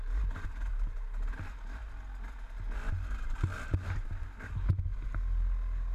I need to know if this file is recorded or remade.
recorded